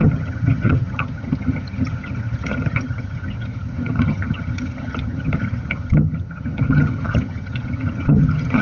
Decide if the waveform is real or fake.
fake